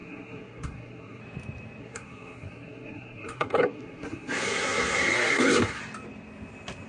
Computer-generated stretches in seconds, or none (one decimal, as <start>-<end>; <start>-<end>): 0.0-1.2; 1.8-5.8